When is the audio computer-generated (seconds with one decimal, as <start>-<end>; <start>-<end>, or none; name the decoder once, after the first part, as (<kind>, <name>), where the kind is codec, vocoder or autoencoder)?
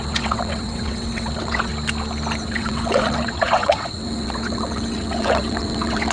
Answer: 0.0-1.7 (vocoder, WaveNeXt); 2.4-6.1